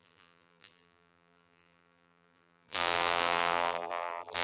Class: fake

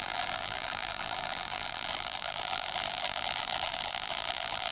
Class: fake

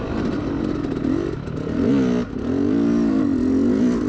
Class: real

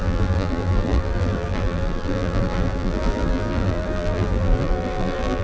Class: fake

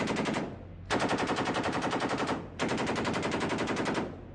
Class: real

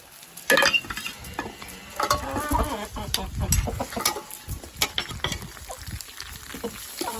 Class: real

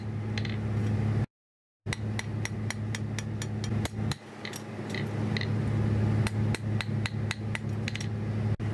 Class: real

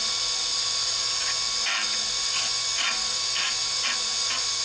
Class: real